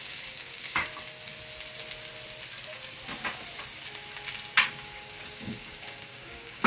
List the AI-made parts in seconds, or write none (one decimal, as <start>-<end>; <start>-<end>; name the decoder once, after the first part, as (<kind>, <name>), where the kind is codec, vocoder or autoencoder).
0.0-0.9 (codec, DAC); 4.7-6.7